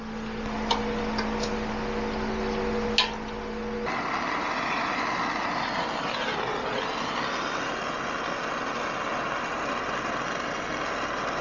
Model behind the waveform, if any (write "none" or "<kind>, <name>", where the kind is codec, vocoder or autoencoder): none